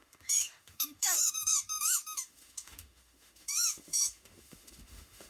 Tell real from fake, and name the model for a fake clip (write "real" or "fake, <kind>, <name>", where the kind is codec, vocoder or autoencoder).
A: fake, autoencoder, DAC-VAE